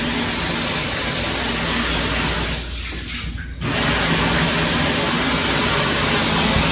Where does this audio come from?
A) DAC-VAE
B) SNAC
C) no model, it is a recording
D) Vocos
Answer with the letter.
C